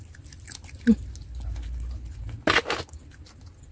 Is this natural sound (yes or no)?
yes